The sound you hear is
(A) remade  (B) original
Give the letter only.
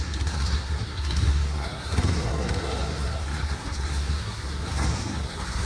A